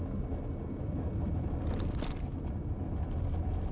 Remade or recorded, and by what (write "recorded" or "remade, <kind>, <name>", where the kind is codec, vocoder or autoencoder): recorded